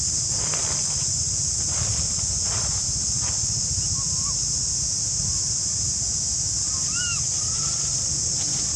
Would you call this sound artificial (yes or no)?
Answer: no